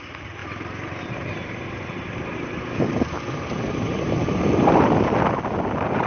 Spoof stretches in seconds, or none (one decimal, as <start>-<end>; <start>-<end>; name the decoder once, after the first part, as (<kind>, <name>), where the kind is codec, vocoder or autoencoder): 0.4-4.1 (vocoder, BigVGAN v2)